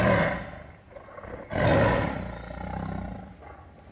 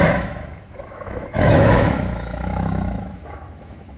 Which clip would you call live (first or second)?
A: first